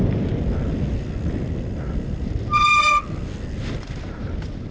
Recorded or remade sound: recorded